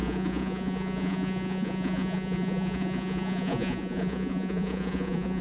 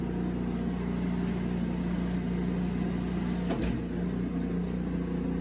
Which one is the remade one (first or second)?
first